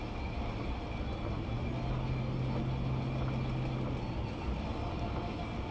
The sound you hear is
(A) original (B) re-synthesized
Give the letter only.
A